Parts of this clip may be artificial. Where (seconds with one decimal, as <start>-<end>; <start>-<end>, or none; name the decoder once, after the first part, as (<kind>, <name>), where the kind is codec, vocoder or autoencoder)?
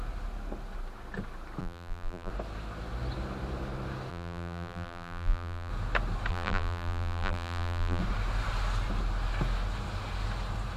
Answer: 1.6-2.3 (vocoder, BigVGAN v2); 4.1-5.7; 6.3-8.0